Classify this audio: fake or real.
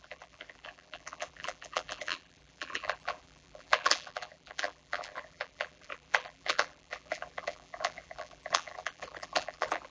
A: fake